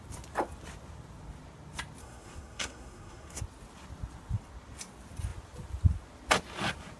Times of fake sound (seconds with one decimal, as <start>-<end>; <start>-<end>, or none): 2.0-3.4